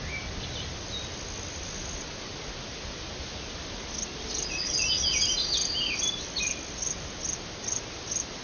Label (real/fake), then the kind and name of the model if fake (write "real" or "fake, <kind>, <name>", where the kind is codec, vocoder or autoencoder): real